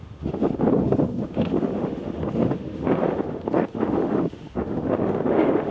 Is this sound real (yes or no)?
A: no